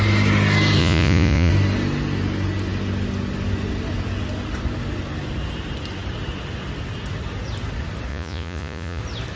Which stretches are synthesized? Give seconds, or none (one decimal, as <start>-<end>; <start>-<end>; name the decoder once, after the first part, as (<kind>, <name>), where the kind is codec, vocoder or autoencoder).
0.8-1.5 (vocoder, Vocos); 8.1-9.0